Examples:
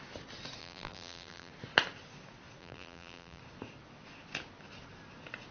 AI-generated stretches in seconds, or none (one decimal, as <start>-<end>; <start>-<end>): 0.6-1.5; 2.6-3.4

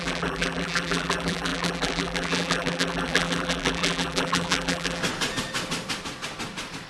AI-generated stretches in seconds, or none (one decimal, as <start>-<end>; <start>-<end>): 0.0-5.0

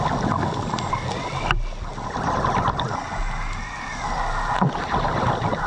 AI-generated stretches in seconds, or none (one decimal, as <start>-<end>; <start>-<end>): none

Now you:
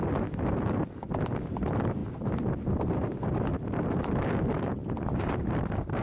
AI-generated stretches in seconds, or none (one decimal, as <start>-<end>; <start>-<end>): 2.0-3.2; 4.8-5.5

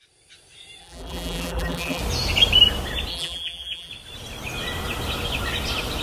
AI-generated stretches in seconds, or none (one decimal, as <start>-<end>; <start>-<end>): 0.8-2.0; 3.1-3.9

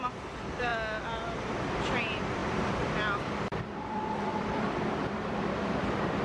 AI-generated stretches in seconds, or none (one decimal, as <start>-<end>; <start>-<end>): 0.0-0.7; 1.4-6.2